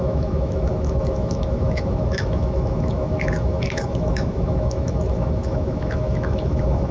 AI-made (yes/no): yes